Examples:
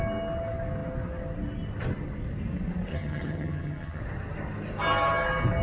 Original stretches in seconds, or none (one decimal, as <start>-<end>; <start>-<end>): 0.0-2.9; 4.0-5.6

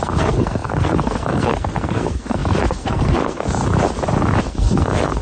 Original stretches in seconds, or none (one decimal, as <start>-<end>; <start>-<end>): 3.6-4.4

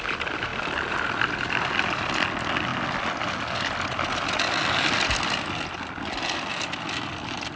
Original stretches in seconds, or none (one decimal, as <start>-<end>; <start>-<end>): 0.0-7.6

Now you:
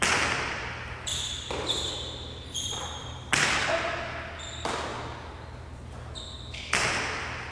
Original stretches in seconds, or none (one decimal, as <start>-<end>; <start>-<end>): 0.0-1.1; 3.7-7.5

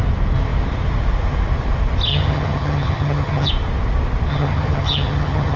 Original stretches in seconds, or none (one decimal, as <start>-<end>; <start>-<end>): 0.0-2.1; 3.5-4.3

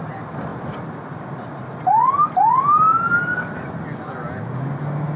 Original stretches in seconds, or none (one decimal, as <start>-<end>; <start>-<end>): 0.0-5.2

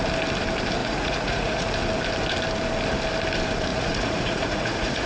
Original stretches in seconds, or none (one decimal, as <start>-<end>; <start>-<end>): 0.0-0.8; 1.7-3.7

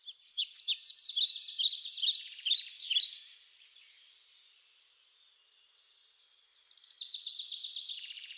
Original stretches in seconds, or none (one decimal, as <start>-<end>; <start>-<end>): 0.0-0.9; 3.2-7.3; 7.9-8.4